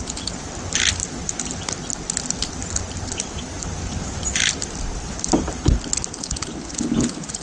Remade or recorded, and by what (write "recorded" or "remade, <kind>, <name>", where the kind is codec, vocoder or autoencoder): recorded